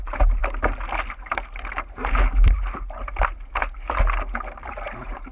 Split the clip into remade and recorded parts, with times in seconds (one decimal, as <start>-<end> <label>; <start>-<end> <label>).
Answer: 0.0-5.3 recorded